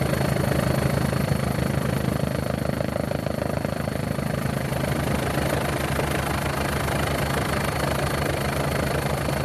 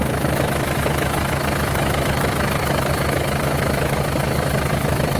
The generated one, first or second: second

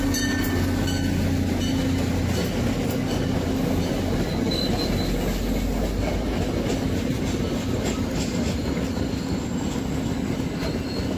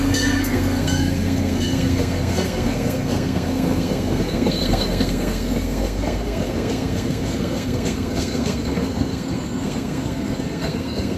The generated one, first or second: second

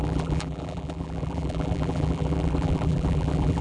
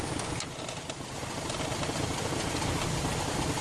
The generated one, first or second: first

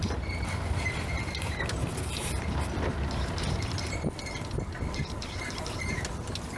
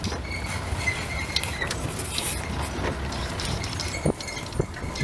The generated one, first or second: first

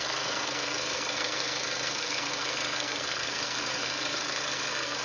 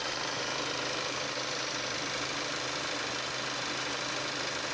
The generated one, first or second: first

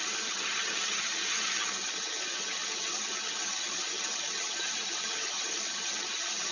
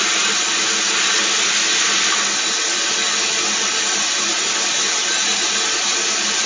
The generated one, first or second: first